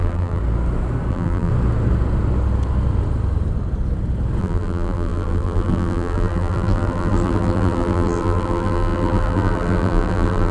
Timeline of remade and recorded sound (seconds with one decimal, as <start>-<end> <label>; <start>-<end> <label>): 0.0-0.4 remade; 0.4-1.1 recorded; 1.1-1.5 remade; 1.5-4.4 recorded; 4.4-10.5 remade